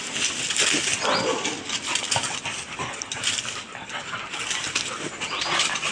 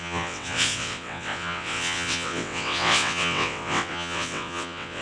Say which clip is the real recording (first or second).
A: first